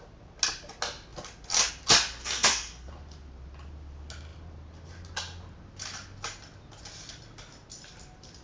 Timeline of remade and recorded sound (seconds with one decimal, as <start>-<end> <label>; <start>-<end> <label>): 0.0-2.2 recorded; 2.2-2.9 remade; 2.9-8.4 recorded

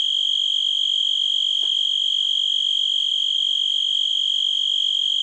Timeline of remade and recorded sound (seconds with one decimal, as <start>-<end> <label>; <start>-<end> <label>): 0.0-5.2 recorded

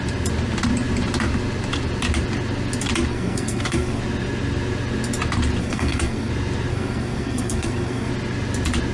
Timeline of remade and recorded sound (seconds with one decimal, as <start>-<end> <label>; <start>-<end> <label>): 0.0-3.1 recorded; 3.1-4.0 remade; 4.0-5.6 recorded; 5.6-6.3 remade; 6.3-6.7 recorded; 6.7-8.1 remade; 8.1-8.9 recorded